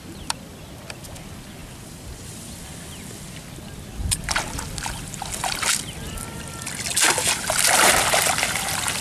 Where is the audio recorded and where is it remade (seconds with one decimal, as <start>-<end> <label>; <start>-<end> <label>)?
0.0-9.0 recorded